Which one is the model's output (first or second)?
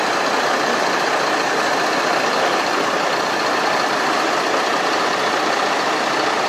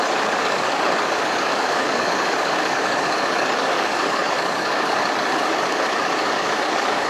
second